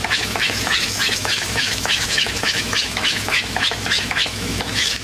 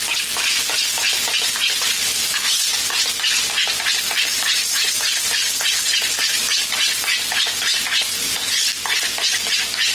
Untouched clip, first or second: second